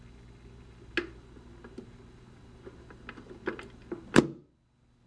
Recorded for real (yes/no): yes